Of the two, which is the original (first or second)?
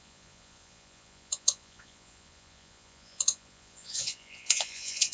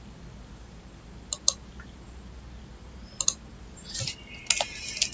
second